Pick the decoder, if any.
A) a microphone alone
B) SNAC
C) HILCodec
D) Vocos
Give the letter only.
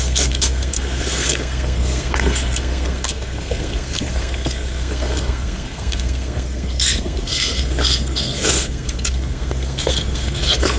B